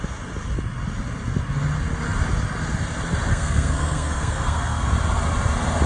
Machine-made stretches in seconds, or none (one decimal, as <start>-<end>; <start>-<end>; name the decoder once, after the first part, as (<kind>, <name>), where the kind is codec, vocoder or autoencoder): 3.3-4.9 (codec, SNAC)